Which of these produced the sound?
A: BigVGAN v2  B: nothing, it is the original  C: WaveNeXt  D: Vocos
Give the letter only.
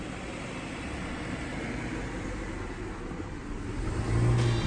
B